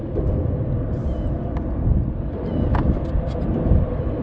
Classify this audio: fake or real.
real